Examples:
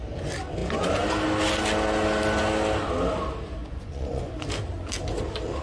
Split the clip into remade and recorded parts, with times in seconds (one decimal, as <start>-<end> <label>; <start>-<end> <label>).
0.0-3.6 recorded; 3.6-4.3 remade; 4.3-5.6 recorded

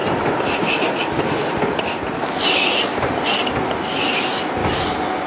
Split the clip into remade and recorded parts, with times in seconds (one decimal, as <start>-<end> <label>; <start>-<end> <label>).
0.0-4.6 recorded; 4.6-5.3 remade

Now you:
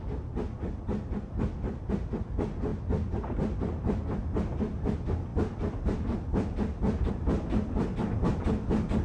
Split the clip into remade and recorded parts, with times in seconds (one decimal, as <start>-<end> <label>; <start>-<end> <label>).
0.0-5.3 recorded; 5.3-7.1 remade; 7.1-9.0 recorded

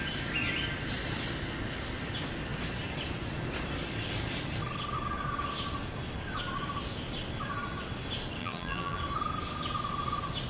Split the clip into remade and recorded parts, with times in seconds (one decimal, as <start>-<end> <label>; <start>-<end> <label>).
0.0-8.4 recorded; 8.4-9.0 remade; 9.0-10.5 recorded

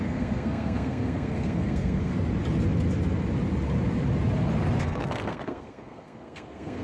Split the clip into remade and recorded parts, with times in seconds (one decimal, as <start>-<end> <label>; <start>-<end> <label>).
0.0-2.1 remade; 2.1-4.8 recorded; 4.8-6.8 remade

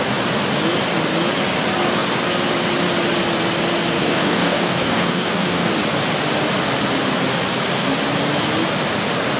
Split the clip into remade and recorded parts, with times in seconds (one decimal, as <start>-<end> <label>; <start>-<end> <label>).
0.0-4.0 recorded; 4.0-5.7 remade; 5.7-9.4 recorded